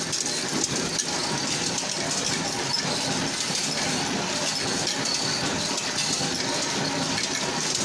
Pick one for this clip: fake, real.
real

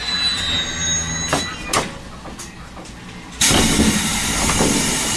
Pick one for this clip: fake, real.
real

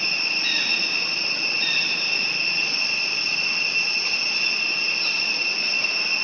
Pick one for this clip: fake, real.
real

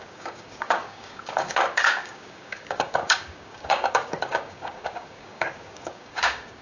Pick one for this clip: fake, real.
fake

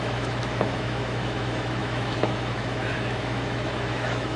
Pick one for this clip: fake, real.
fake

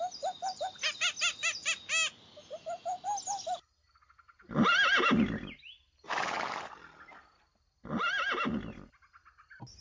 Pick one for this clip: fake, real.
real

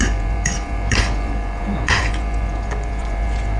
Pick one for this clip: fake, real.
fake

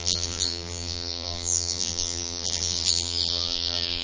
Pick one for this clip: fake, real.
fake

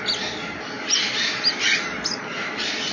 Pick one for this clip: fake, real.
real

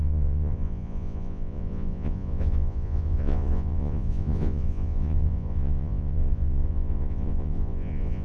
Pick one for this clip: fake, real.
fake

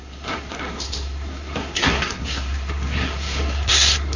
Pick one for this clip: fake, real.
fake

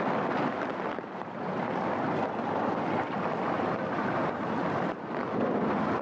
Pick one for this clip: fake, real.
real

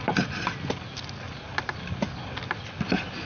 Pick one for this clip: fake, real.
real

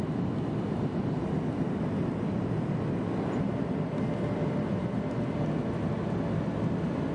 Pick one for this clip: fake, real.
real